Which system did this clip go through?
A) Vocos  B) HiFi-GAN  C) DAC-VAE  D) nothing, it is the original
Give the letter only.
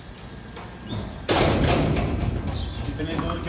D